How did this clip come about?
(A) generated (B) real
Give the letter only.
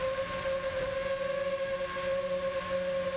B